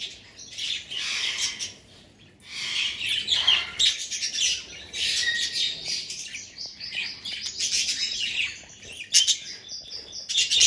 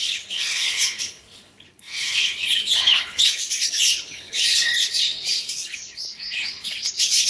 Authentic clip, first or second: first